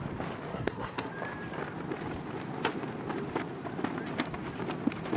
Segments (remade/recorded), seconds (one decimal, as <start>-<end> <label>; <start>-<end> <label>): 0.0-0.5 recorded; 0.5-1.1 remade; 1.1-5.2 recorded